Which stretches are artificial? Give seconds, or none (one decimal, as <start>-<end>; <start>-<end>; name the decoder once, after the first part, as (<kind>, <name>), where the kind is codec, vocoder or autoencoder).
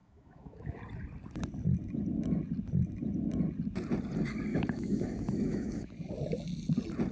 0.0-0.8 (autoencoder, DAC-VAE); 4.5-5.9